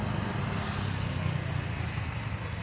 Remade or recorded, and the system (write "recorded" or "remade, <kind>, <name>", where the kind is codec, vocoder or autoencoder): recorded